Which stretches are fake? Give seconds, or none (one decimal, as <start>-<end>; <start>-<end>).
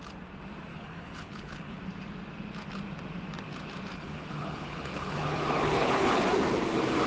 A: 0.7-1.8; 3.9-6.2